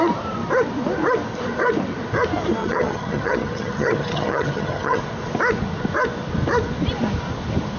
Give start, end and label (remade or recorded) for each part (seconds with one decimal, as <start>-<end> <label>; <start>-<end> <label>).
0.0-2.6 recorded; 2.6-5.0 remade; 5.0-7.8 recorded